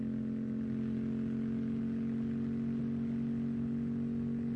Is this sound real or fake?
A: real